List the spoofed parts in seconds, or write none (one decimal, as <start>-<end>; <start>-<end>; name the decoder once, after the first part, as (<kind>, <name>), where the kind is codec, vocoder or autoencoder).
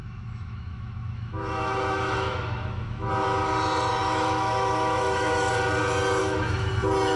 0.0-3.1 (autoencoder, DAC-VAE); 4.0-5.5; 6.2-6.7